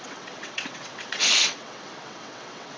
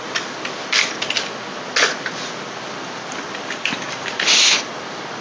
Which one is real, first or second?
second